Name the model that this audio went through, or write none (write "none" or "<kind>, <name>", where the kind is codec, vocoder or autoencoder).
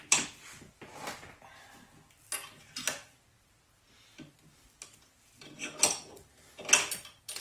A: none